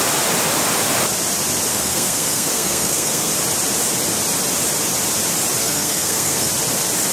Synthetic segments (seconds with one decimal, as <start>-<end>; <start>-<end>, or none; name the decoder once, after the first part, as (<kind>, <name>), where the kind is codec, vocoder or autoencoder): 1.7-3.3 (codec, SNAC); 5.6-6.5